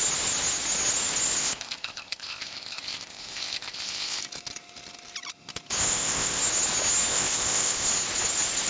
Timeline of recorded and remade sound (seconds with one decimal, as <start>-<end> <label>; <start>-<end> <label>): 0.0-1.4 recorded; 1.4-4.2 remade; 4.2-5.8 recorded; 5.8-6.4 remade; 6.4-7.1 recorded; 7.1-7.9 remade; 7.9-8.7 recorded